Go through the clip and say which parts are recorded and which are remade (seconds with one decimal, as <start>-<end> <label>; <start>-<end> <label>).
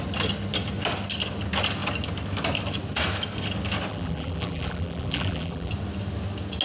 0.0-3.9 recorded; 3.9-5.7 remade; 5.7-6.6 recorded